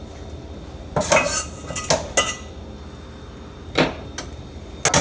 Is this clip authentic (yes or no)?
yes